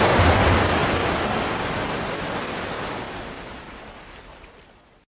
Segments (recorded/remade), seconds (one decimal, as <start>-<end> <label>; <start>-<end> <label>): 0.0-5.1 recorded